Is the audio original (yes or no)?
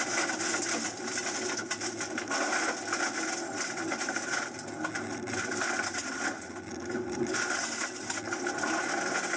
yes